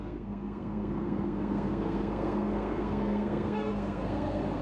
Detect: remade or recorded remade